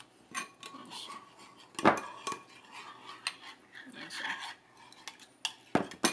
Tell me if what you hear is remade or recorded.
recorded